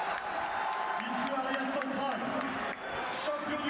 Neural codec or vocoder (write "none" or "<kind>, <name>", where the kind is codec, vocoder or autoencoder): none